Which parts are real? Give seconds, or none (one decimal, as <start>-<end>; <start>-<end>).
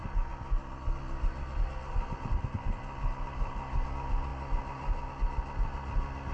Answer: 0.0-6.3